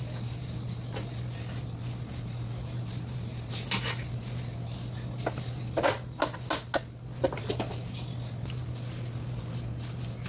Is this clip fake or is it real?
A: real